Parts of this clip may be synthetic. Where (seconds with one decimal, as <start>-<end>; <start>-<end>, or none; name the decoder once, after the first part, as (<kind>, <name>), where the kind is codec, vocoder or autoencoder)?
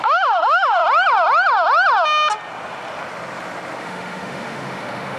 0.0-0.8 (autoencoder, DAC-VAE); 3.8-5.2